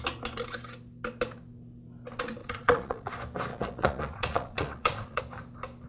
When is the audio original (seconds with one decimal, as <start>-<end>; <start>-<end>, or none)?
0.0-2.4; 3.1-3.5; 5.2-5.9